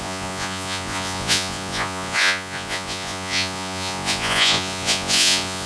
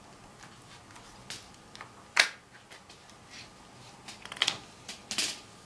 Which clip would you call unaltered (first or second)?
second